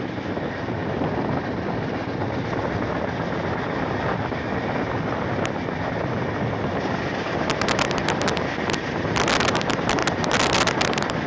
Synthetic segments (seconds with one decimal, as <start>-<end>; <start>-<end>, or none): none